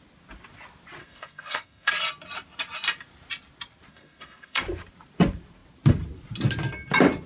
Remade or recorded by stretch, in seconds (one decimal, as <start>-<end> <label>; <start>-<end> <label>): 0.0-1.0 recorded; 1.0-1.9 remade; 1.9-3.9 recorded; 3.9-4.6 remade; 4.6-7.3 recorded